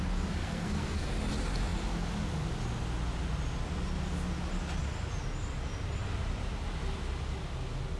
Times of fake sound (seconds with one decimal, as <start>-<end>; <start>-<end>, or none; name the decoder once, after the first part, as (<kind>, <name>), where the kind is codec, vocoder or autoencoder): 0.4-1.1 (codec, SNAC)